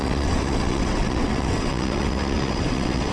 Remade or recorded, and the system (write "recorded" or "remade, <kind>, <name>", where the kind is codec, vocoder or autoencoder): remade, vocoder, WaveNeXt